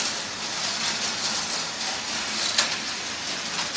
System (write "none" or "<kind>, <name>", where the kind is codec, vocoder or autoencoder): none